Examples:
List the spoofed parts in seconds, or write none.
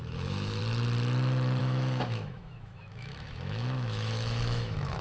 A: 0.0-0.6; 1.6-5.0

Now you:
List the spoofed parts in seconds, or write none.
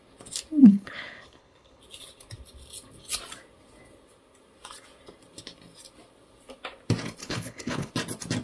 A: 0.6-1.8; 7.2-7.9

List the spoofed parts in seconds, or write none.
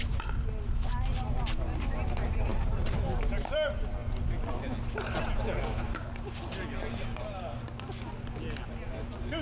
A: none